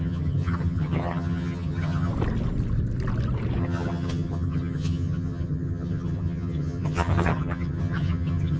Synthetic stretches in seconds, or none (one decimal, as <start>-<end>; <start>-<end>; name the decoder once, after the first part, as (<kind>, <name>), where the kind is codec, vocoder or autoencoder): 0.0-2.1 (vocoder, HiFi-GAN); 3.6-8.6